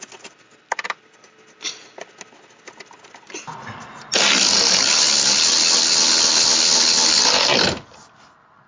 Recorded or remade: recorded